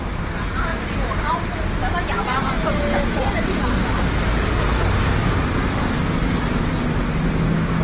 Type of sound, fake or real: real